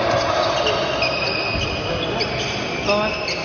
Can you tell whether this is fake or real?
real